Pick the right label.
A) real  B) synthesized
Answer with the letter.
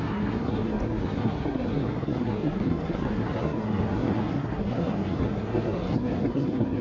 B